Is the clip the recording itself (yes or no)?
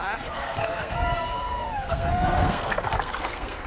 no